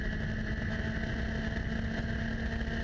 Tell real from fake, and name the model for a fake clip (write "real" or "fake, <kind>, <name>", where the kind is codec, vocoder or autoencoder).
real